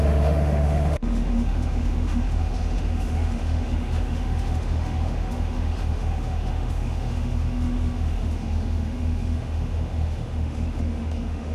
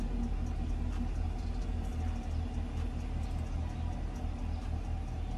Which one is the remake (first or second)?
first